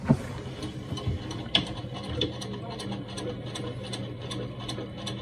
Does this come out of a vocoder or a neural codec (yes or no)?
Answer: no